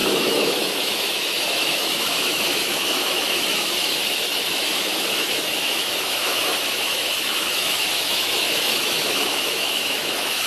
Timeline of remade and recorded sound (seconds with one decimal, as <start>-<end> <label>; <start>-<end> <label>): 0.0-4.0 remade; 4.0-4.5 recorded; 4.5-10.5 remade